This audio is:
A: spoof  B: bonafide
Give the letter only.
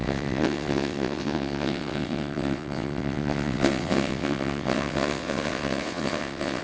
A